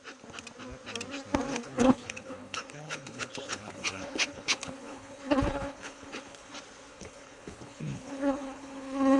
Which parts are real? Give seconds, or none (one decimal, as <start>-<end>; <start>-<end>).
0.0-1.5; 6.5-6.9